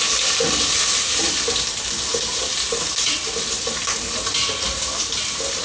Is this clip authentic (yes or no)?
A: yes